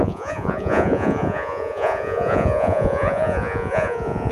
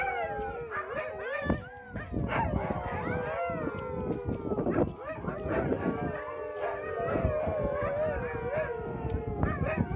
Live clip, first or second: second